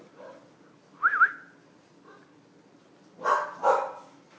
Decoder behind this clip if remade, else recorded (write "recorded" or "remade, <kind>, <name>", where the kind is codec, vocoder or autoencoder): recorded